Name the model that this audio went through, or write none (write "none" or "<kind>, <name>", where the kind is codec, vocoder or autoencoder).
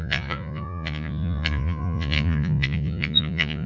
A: vocoder, Vocos